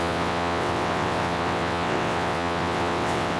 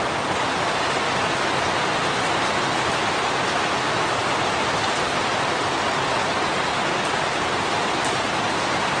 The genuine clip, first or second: second